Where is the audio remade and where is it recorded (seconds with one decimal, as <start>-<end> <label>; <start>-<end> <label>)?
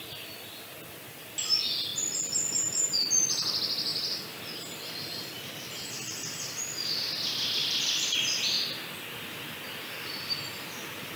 0.0-3.9 recorded; 3.9-6.6 remade; 6.6-7.6 recorded; 7.6-8.4 remade; 8.4-11.2 recorded